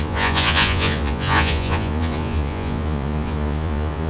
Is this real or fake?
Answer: fake